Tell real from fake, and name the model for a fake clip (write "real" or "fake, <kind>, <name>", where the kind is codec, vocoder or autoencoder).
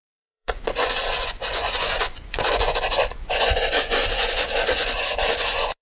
fake, vocoder, Vocos